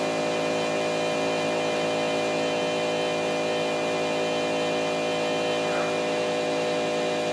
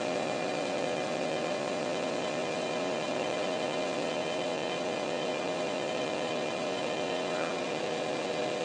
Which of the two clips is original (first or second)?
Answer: first